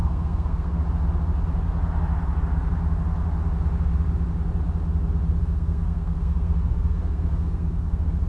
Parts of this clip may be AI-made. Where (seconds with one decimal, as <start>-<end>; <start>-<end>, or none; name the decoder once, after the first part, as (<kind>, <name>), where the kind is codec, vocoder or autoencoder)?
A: 0.0-0.8 (codec, SNAC); 5.4-8.3